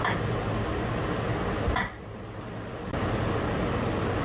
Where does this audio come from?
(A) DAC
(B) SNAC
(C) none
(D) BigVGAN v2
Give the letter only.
C